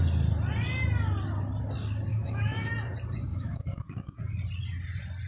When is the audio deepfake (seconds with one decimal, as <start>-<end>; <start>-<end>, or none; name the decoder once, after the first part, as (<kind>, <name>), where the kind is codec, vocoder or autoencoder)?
2.1-2.7 (autoencoder, DAC-VAE); 3.3-4.2